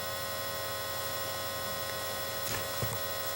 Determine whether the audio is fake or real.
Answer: real